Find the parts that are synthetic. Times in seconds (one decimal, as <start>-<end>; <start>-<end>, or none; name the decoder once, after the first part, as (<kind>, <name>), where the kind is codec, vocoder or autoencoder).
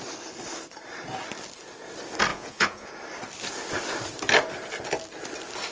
2.3-2.9 (vocoder, Vocos)